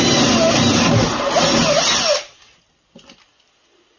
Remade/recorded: recorded